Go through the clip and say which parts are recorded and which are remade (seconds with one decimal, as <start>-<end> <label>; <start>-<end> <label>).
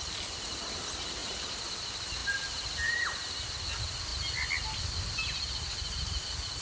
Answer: 0.0-6.6 recorded